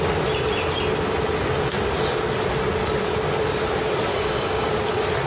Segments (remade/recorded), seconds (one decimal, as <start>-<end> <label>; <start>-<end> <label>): 0.0-4.1 recorded; 4.1-4.7 remade; 4.7-5.3 recorded